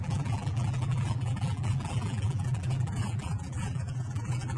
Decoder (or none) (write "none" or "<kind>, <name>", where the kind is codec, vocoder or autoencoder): vocoder, BigVGAN v2